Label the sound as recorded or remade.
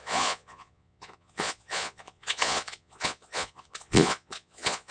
remade